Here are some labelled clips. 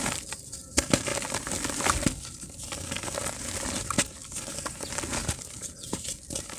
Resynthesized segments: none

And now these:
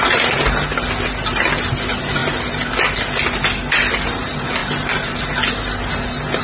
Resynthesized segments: none

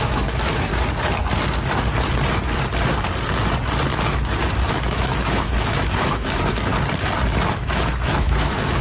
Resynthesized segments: 0.0-0.7 (autoencoder, DAC-VAE); 4.7-6.7; 7.5-8.8

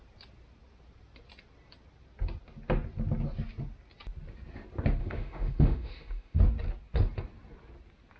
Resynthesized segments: 5.0-6.4 (autoencoder, DAC-VAE)

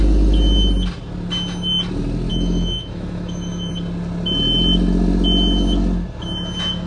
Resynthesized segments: 2.3-3.7 (autoencoder, DAC-VAE)